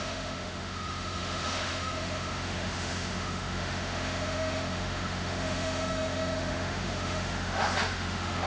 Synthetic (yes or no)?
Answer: yes